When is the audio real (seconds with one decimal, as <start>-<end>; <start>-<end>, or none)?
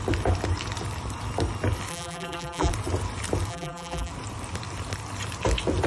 0.0-1.9; 2.7-3.5; 4.1-5.9